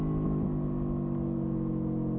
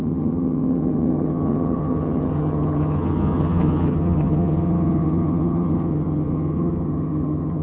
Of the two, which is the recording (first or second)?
first